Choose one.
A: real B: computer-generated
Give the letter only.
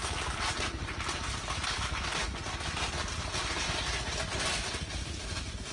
A